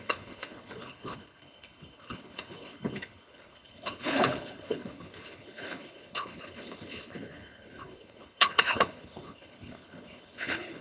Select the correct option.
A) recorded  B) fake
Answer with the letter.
B